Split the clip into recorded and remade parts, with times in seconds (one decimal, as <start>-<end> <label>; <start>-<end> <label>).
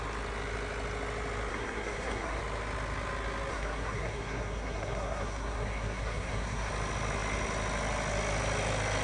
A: 0.0-1.5 recorded; 1.5-2.4 remade; 2.4-3.5 recorded; 3.5-6.7 remade; 6.7-9.0 recorded